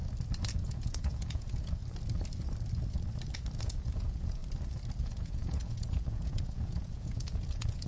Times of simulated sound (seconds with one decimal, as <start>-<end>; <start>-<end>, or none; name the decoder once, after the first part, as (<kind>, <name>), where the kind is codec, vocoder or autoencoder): 0.5-1.8 (vocoder, Vocos); 3.6-4.4; 5.0-7.9